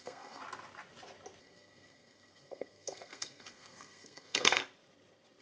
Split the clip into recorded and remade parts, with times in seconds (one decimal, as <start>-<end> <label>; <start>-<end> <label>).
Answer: 0.0-0.4 remade; 0.4-1.4 recorded; 1.4-4.6 remade; 4.6-5.4 recorded